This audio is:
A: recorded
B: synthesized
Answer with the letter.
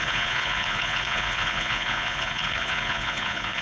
B